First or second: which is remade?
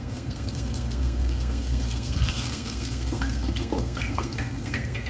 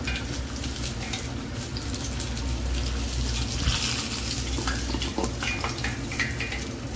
first